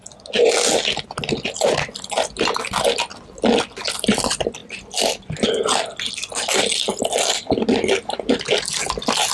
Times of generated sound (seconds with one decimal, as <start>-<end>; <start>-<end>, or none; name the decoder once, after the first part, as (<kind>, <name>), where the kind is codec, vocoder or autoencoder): none

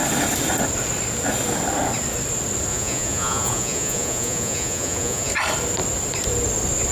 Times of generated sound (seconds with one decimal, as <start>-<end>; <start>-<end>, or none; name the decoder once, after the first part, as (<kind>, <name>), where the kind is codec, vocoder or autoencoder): 2.7-5.3 (vocoder, Vocos)

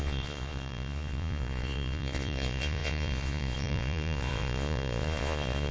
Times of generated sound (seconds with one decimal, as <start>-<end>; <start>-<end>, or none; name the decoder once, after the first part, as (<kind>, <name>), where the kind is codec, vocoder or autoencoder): 0.0-5.7 (vocoder, Vocos)

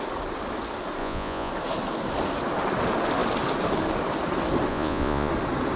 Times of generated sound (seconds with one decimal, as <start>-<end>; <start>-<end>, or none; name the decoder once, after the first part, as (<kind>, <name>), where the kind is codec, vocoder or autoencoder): 1.0-1.5 (vocoder, Vocos); 4.7-5.3

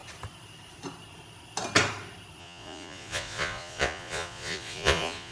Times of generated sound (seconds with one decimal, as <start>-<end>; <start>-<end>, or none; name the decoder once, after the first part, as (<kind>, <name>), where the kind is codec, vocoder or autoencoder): 2.4-5.3 (vocoder, Vocos)